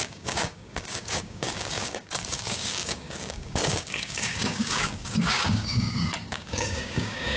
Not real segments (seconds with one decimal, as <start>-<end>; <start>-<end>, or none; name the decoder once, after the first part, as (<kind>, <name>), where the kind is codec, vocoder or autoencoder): 0.0-7.4 (codec, DAC)